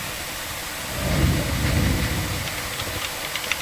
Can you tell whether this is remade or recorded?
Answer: recorded